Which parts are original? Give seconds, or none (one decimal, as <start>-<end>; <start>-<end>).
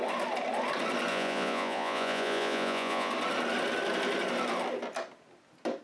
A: 0.0-1.1; 3.1-5.8